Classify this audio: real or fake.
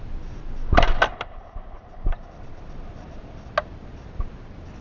real